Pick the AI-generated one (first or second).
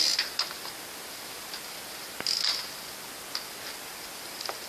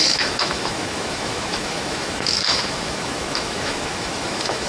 second